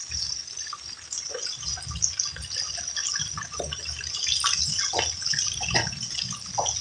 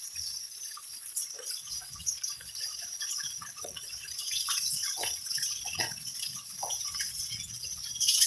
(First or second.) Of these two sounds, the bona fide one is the first